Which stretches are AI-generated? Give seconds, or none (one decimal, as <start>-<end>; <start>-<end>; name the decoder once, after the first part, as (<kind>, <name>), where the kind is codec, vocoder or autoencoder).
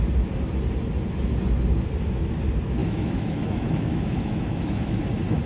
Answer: 2.8-5.0 (autoencoder, DAC-VAE)